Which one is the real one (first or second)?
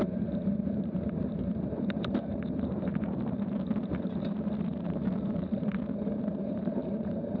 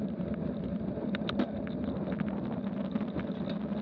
second